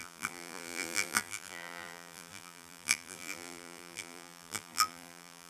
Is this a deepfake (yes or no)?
yes